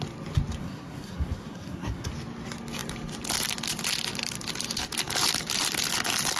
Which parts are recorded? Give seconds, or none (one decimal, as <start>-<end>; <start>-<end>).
0.0-0.6; 2.1-6.4